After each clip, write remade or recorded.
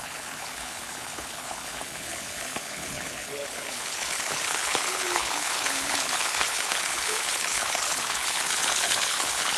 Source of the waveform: remade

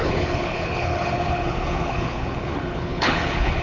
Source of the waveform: remade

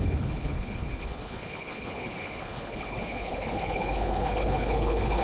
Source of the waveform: remade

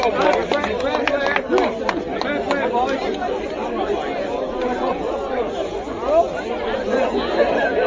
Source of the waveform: recorded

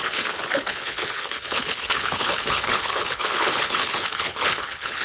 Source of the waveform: remade